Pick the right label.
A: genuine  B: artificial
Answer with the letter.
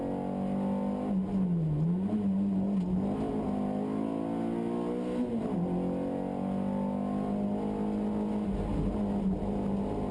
A